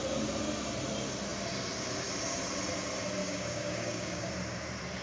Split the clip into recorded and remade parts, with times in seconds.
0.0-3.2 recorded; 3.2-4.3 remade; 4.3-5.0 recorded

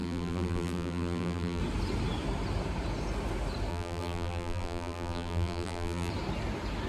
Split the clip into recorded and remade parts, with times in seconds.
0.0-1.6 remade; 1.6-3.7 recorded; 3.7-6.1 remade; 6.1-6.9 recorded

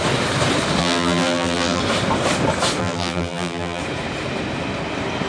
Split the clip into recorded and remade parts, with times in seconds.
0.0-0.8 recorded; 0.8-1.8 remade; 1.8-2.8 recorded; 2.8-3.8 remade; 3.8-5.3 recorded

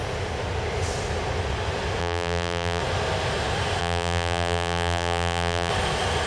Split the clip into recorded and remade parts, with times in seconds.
0.0-2.0 recorded; 2.0-2.8 remade; 2.8-3.8 recorded; 3.8-5.7 remade; 5.7-6.3 recorded

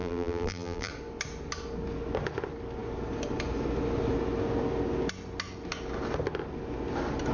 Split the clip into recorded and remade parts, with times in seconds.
0.0-0.9 remade; 0.9-7.3 recorded

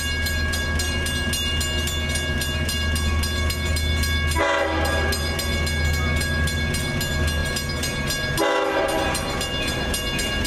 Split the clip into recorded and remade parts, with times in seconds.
0.0-10.5 recorded

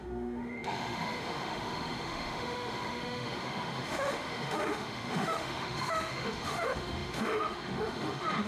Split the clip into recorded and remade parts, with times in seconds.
0.0-8.5 remade